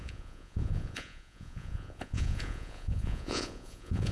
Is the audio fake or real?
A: fake